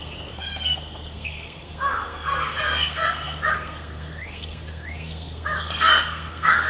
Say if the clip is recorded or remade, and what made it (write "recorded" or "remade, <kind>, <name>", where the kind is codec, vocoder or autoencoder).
remade, codec, SNAC